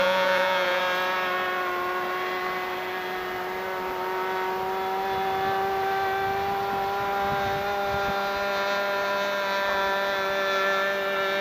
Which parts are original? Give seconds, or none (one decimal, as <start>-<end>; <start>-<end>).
0.8-11.4